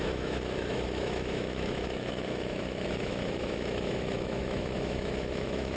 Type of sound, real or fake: fake